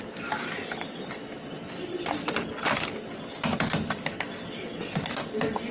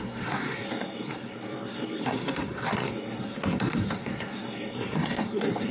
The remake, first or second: second